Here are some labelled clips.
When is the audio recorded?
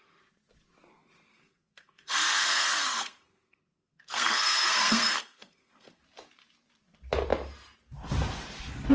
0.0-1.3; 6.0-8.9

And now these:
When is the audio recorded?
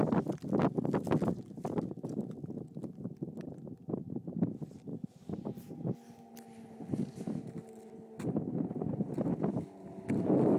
0.0-10.6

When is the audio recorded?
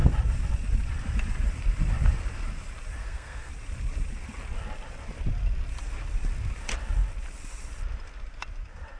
0.0-3.0; 3.5-9.0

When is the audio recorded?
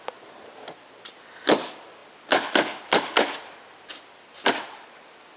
0.0-5.4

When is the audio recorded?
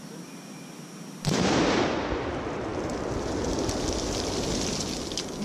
0.0-5.4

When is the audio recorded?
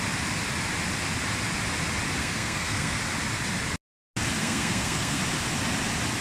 0.0-2.2; 3.0-4.4; 5.2-6.2